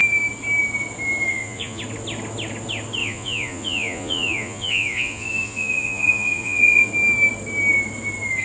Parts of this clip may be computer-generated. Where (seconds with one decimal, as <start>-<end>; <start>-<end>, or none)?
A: 1.3-1.8; 3.0-6.9